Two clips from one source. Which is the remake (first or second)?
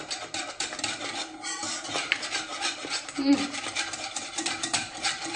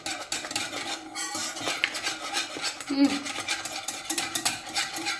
first